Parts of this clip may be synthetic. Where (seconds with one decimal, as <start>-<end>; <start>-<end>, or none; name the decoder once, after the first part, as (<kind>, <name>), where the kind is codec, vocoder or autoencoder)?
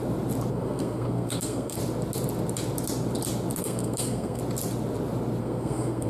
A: 0.5-1.8 (codec, SNAC); 3.6-4.4; 5.4-6.1